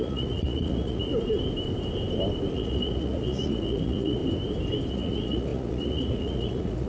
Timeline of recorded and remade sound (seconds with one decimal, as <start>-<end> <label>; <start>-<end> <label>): 0.0-1.1 remade; 1.1-2.5 recorded; 2.5-4.2 remade; 4.2-4.9 recorded; 4.9-6.9 remade